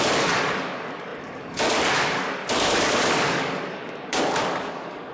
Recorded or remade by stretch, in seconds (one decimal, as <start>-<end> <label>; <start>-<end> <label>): 0.0-5.1 remade